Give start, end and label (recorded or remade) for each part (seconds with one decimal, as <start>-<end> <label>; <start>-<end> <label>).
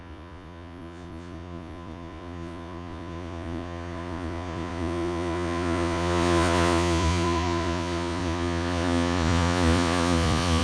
0.0-10.6 remade